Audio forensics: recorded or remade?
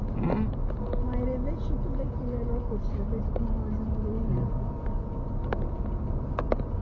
recorded